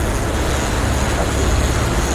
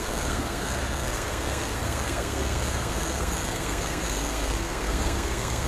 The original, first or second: first